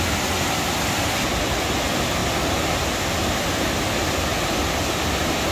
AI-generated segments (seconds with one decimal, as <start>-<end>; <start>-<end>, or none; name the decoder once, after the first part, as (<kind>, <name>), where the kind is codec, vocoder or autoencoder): none